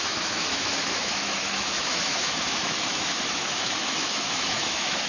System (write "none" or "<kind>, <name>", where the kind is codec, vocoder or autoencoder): autoencoder, DAC-VAE